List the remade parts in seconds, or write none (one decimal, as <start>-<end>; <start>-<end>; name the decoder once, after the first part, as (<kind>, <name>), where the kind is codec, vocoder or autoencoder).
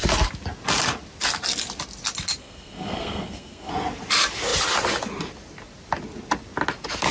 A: 2.4-3.7 (codec, SNAC)